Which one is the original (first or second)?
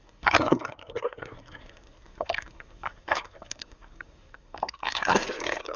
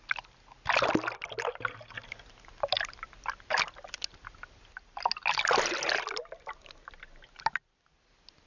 second